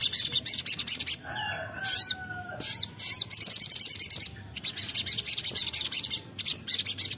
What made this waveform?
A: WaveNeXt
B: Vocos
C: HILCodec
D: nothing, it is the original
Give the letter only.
D